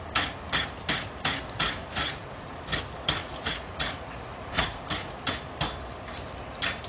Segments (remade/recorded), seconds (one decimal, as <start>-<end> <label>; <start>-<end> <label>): 0.0-1.8 recorded; 1.8-2.5 remade; 2.5-3.2 recorded; 3.2-4.9 remade; 4.9-6.9 recorded